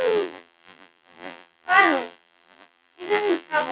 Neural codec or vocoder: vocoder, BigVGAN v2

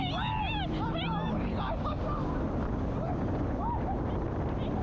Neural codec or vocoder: none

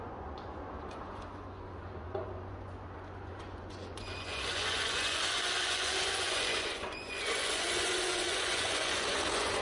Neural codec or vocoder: vocoder, Vocos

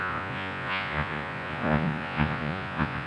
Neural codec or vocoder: vocoder, Vocos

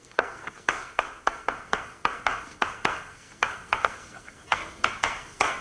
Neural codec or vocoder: codec, SNAC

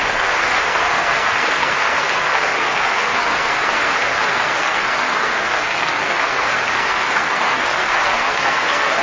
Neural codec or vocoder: codec, SNAC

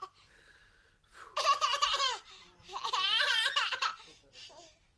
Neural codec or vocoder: vocoder, BigVGAN v2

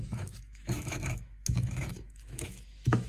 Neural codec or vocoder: autoencoder, DAC-VAE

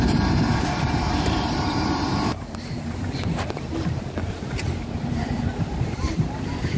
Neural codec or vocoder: vocoder, BigVGAN v2